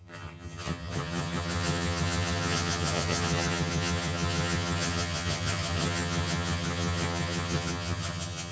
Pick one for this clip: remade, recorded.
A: remade